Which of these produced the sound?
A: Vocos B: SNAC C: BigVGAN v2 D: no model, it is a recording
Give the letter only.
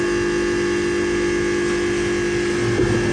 D